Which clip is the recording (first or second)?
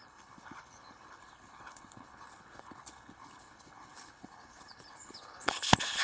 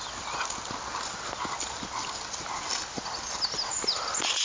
second